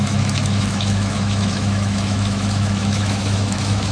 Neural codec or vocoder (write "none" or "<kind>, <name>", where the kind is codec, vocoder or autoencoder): autoencoder, DAC-VAE